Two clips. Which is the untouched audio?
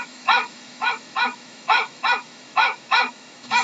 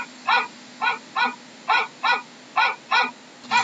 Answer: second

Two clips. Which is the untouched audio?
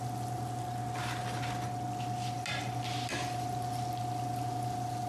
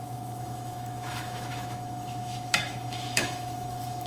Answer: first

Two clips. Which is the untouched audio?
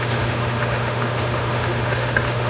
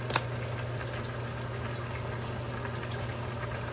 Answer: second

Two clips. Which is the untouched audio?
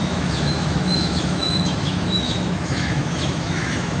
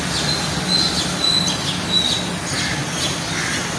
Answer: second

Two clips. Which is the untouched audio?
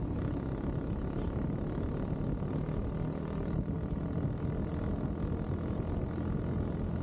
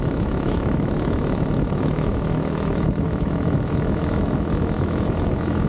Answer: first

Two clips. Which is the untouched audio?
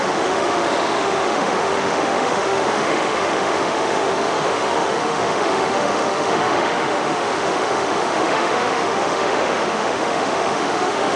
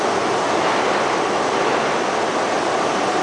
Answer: second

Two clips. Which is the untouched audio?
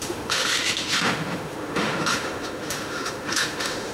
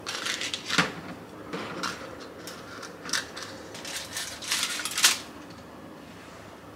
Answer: second